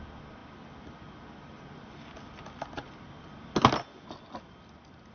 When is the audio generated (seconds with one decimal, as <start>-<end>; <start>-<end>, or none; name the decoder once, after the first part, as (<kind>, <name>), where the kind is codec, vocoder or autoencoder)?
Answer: none